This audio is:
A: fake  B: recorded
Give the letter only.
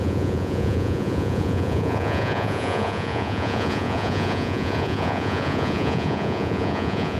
A